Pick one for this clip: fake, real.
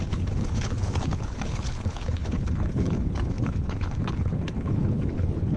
fake